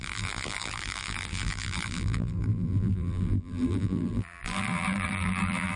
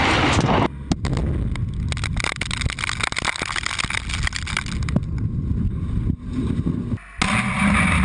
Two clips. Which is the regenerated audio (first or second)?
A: first